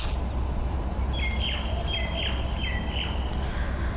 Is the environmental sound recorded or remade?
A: recorded